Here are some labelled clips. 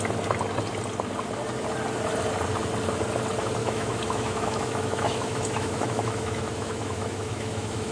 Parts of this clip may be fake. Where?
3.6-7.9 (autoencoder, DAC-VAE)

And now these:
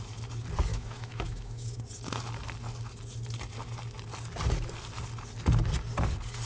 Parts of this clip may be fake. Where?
0.7-1.8 (autoencoder, DAC-VAE)

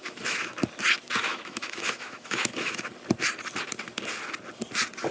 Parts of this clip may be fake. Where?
0.0-0.6 (autoencoder, DAC-VAE); 1.3-2.9

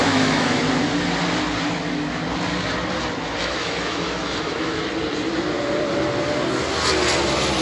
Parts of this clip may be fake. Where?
0.0-0.6 (autoencoder, DAC-VAE); 3.4-4.8